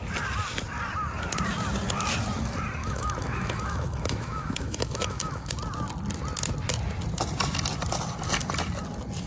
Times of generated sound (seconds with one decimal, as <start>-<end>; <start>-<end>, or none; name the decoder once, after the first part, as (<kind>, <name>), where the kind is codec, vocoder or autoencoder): 2.8-5.5 (autoencoder, DAC-VAE)